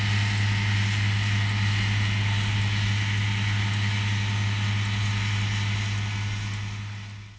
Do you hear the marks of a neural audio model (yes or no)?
no